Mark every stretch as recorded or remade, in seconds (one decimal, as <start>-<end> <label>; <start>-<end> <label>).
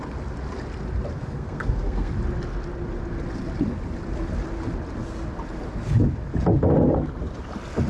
0.0-1.2 recorded; 1.2-2.1 remade; 2.1-7.9 recorded